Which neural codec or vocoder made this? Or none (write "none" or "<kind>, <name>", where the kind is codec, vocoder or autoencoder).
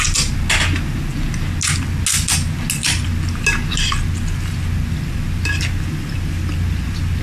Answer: none